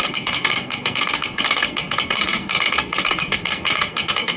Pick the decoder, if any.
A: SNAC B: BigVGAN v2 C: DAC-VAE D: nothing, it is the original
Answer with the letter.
A